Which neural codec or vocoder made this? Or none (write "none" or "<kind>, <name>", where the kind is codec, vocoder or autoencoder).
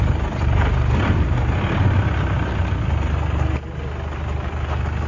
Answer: none